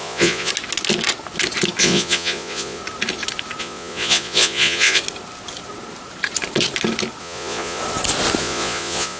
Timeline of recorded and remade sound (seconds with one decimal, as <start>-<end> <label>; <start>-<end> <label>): 0.0-0.5 remade; 0.5-1.8 recorded; 1.8-2.8 remade; 2.8-3.6 recorded; 3.6-5.0 remade; 5.0-7.2 recorded; 7.2-7.8 remade; 7.8-8.4 recorded; 8.4-9.2 remade